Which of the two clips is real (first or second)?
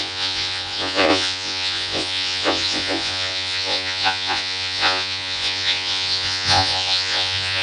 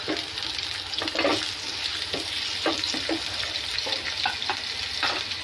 second